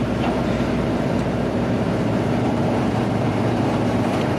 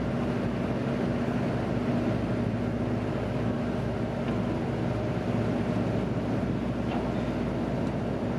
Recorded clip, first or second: second